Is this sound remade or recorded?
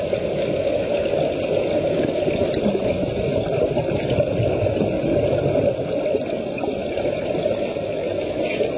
recorded